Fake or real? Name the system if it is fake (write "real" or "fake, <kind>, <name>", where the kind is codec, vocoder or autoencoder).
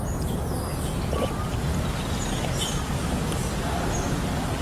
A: real